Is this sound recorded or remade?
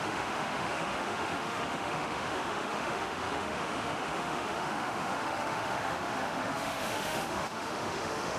remade